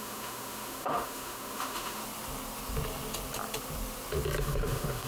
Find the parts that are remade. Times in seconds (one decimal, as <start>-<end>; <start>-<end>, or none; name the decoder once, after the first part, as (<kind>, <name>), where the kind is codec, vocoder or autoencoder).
0.0-2.0 (autoencoder, DAC-VAE); 4.4-5.1